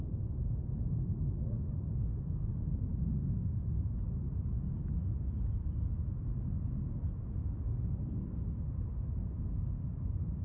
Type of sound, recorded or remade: recorded